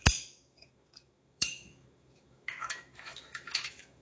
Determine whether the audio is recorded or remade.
remade